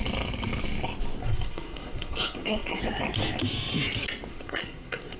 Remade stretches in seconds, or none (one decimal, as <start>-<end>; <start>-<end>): 1.2-2.8; 4.3-5.2